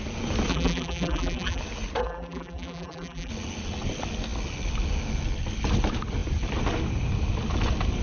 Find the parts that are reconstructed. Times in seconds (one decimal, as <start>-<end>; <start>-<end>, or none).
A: 0.5-1.6; 2.0-3.3